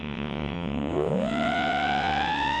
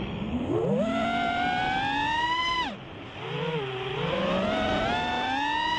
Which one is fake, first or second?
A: first